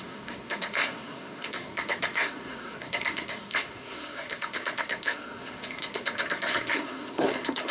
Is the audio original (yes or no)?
no